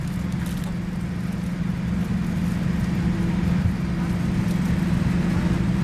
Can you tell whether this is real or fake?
real